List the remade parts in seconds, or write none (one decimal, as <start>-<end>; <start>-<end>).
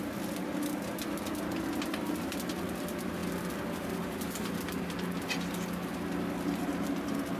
none